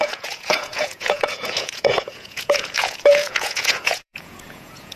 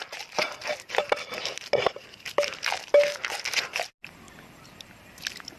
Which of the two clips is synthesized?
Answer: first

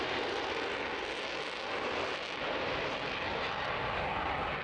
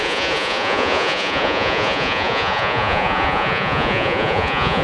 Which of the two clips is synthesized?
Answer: second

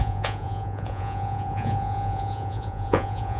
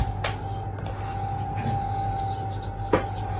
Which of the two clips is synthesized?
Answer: first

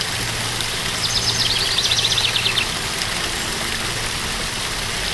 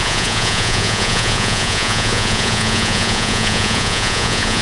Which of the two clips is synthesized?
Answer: second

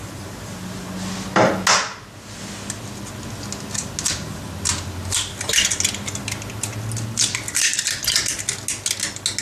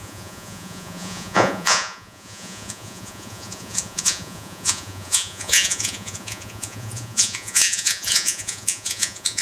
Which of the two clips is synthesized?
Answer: second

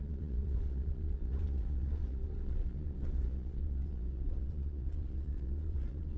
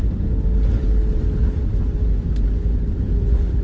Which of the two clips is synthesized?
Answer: first